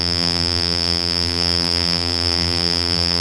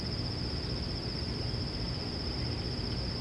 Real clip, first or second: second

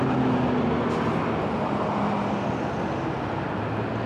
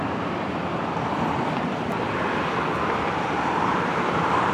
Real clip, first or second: first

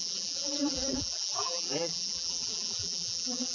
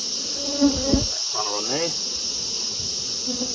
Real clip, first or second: second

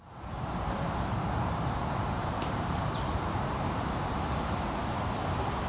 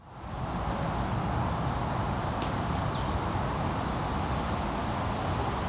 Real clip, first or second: second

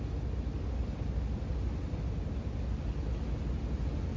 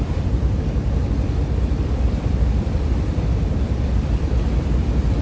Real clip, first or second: first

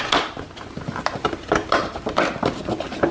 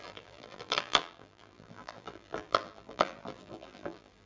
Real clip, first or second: first